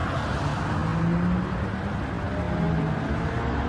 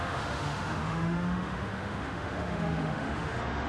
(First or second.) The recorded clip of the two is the first